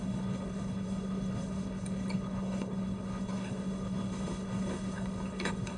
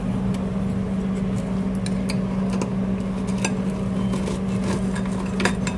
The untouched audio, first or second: second